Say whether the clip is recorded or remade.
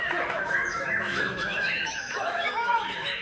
remade